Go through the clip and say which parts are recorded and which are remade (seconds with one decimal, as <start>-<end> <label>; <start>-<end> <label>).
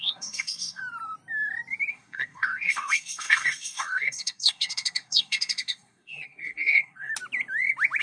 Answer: 0.0-0.8 remade; 0.8-1.9 recorded; 1.9-7.1 remade; 7.1-8.0 recorded